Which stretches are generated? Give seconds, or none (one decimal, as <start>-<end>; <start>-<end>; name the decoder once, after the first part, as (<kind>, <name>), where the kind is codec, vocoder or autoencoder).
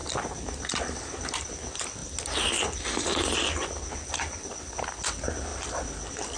0.0-1.5 (vocoder, BigVGAN v2); 5.5-6.4